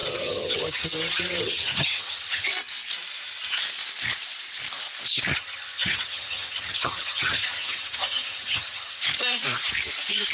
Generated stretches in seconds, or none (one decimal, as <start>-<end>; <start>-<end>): 0.0-2.5; 5.3-9.0